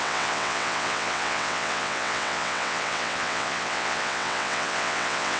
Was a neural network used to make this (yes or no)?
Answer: yes